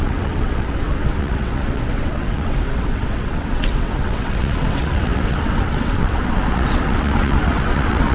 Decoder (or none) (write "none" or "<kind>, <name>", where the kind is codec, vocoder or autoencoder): vocoder, WaveNeXt